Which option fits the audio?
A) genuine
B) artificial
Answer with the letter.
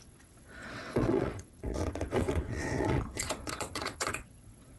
B